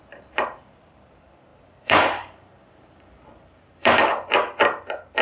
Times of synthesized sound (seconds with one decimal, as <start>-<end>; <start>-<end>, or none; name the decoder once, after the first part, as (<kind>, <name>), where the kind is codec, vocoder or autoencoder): 0.0-4.1 (vocoder, BigVGAN v2)